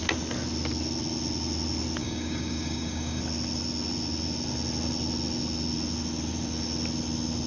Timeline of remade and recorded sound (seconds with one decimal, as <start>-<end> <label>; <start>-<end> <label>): 0.0-2.0 recorded; 2.0-3.2 remade; 3.2-7.5 recorded